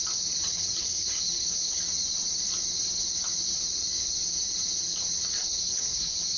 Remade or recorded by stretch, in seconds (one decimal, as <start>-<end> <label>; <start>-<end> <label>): 0.0-0.5 recorded; 0.5-1.8 remade; 1.8-5.4 recorded; 5.4-6.4 remade